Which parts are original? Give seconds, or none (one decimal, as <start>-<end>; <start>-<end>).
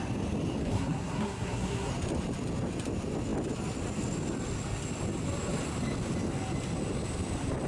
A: 0.0-0.6; 1.9-7.7